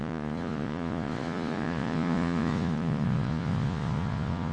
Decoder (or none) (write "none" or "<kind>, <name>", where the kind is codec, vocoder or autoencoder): vocoder, Vocos